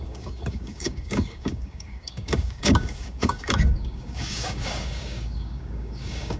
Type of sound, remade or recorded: remade